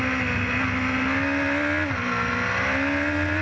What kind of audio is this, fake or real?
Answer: real